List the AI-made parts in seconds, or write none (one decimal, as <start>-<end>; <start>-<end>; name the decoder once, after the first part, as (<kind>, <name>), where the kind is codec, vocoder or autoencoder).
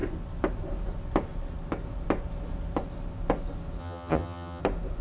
3.8-4.6 (vocoder, HiFi-GAN)